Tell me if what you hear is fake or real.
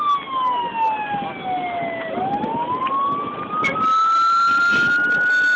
real